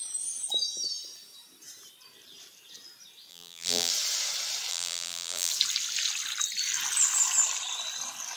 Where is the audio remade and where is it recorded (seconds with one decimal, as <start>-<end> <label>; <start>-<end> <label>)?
0.0-3.3 recorded; 3.3-3.9 remade; 3.9-4.7 recorded; 4.7-5.5 remade; 5.5-8.4 recorded

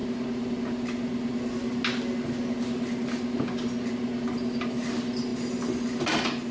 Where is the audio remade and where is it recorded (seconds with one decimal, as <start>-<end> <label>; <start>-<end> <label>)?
0.0-6.5 recorded

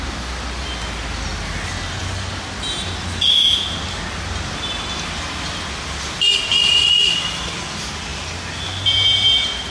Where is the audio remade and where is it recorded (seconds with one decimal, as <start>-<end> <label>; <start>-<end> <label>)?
0.0-9.7 recorded

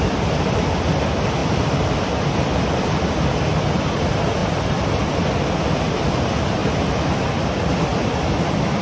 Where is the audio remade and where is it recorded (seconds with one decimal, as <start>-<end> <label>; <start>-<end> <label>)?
0.0-4.4 recorded; 4.4-4.9 remade; 4.9-6.6 recorded; 6.6-7.2 remade; 7.2-7.9 recorded; 7.9-8.8 remade